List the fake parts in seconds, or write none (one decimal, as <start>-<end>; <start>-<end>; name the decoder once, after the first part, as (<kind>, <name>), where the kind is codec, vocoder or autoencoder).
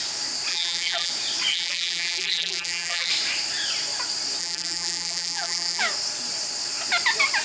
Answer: 0.5-1.1 (vocoder, BigVGAN v2); 1.5-3.1; 4.4-5.8